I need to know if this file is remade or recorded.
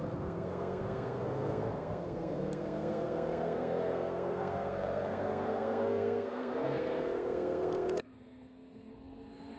remade